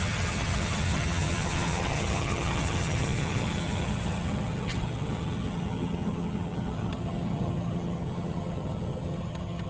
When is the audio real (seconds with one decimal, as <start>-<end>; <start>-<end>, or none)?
none